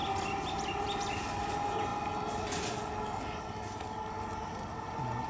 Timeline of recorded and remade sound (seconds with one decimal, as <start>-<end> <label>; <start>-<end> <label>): 0.0-5.3 recorded